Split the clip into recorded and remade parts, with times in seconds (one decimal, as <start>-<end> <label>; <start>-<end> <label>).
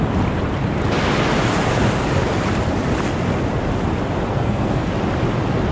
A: 0.0-4.3 recorded; 4.3-4.9 remade; 4.9-5.7 recorded